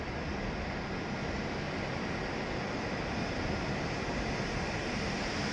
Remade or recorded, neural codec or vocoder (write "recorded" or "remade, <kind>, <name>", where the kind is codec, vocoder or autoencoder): recorded